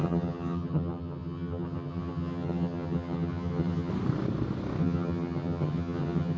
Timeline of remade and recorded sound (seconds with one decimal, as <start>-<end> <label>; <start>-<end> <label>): 0.0-3.9 remade; 3.9-4.8 recorded; 4.8-6.4 remade